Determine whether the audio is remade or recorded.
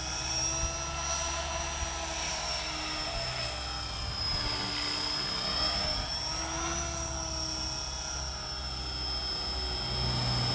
recorded